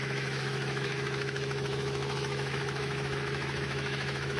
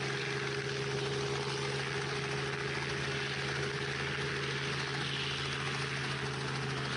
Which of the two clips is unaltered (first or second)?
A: second